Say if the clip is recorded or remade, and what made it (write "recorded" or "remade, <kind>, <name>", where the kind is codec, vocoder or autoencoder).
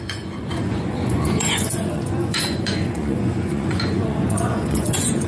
remade, vocoder, Vocos